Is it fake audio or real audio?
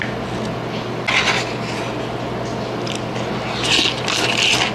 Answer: real